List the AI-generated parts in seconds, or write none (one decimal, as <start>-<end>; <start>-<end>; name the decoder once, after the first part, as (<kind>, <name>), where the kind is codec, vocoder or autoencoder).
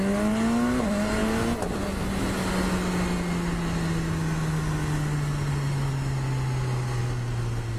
none